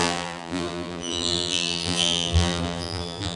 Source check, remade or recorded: remade